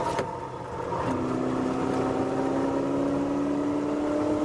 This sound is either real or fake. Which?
real